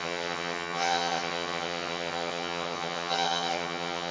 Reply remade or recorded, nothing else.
remade